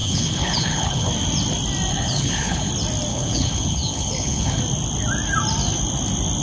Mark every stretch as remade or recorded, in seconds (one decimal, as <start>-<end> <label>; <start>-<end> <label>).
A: 0.0-1.1 remade; 1.1-1.9 recorded; 1.9-2.7 remade; 2.7-3.1 recorded; 3.1-4.6 remade; 4.6-6.4 recorded